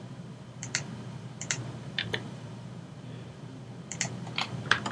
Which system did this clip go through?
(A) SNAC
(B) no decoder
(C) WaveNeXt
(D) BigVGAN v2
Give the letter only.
D